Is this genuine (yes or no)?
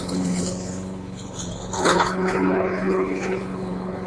no